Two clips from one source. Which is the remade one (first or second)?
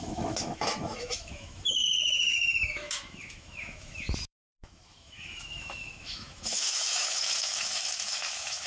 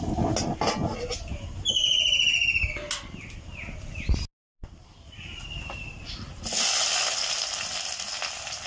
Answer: first